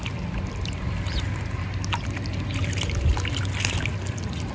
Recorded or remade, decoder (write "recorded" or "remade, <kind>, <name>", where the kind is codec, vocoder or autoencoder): recorded